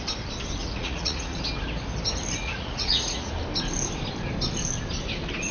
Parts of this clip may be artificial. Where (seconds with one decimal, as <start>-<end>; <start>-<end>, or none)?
0.6-1.4; 2.4-3.3